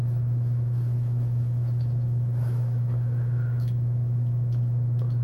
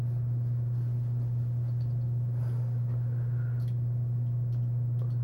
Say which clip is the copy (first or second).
first